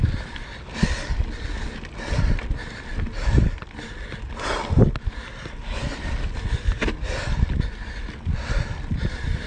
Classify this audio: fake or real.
real